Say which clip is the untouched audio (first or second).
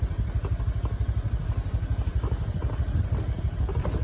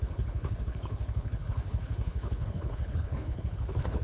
first